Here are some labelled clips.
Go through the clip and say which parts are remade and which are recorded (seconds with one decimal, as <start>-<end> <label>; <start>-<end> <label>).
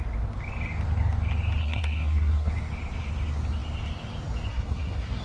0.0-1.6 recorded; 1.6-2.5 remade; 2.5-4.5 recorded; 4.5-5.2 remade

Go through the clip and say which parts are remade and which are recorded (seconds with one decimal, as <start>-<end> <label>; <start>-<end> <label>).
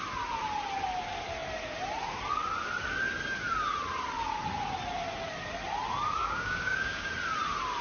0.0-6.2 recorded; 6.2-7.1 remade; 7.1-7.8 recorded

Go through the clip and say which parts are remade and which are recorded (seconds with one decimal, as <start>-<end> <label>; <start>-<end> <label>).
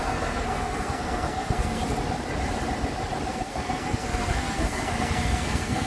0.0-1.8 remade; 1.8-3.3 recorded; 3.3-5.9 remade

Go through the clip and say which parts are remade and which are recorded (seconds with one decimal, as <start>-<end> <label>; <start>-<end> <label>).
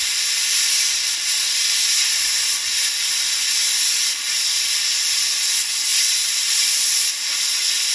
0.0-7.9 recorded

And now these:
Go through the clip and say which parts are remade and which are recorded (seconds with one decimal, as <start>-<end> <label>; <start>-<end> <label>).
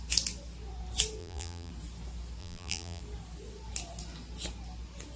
0.0-1.2 recorded; 1.2-1.7 remade; 1.7-2.4 recorded; 2.4-3.0 remade; 3.0-5.2 recorded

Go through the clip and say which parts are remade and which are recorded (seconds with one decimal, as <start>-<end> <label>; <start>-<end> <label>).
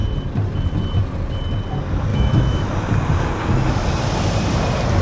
0.0-2.1 recorded; 2.1-2.7 remade; 2.7-5.0 recorded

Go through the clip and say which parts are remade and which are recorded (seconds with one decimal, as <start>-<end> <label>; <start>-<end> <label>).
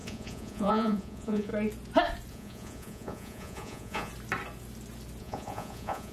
0.0-1.5 remade; 1.5-2.3 recorded; 2.3-4.1 remade; 4.1-5.2 recorded; 5.2-6.1 remade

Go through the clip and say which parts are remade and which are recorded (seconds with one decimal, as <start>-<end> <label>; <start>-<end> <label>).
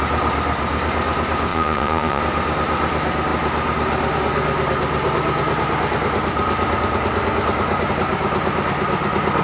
0.0-1.5 recorded; 1.5-2.2 remade; 2.2-9.4 recorded